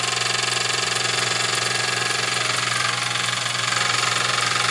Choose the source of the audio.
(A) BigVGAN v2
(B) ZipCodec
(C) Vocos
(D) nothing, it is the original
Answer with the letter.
D